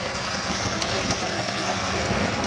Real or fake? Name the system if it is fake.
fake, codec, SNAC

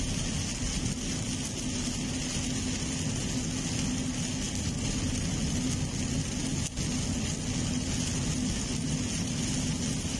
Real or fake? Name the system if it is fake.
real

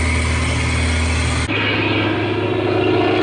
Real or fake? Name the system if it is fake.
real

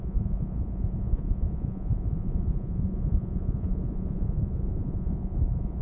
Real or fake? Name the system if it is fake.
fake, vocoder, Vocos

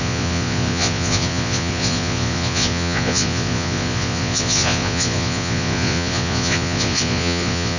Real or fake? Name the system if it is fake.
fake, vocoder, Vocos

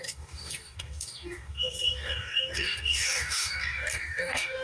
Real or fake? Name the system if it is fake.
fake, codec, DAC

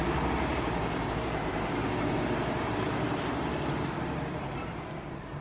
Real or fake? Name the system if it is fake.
fake, vocoder, BigVGAN v2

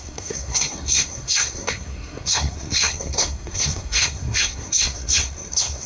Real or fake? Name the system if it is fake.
fake, codec, SNAC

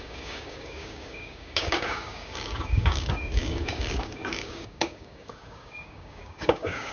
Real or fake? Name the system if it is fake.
fake, codec, DAC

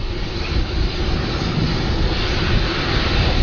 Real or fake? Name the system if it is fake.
fake, vocoder, BigVGAN v2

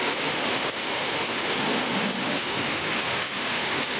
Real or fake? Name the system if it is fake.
fake, autoencoder, DAC-VAE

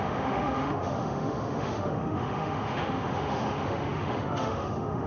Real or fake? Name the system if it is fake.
fake, autoencoder, DAC-VAE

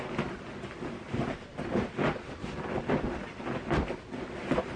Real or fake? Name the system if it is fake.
real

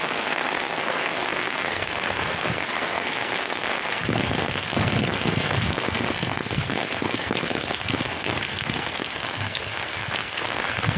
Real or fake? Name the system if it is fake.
fake, codec, SNAC